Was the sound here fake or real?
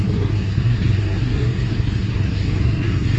fake